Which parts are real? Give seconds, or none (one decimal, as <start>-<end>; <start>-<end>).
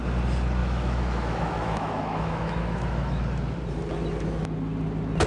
0.0-0.6; 3.2-5.3